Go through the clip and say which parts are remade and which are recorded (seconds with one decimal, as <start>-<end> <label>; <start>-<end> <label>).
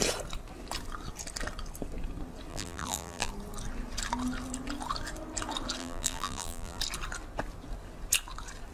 0.0-2.5 recorded; 2.5-3.3 remade; 3.3-5.8 recorded; 5.8-6.8 remade; 6.8-8.7 recorded